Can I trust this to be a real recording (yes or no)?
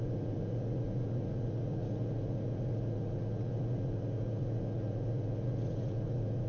no